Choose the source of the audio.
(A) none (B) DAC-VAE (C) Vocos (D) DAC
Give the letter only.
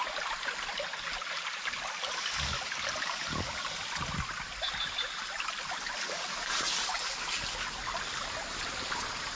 A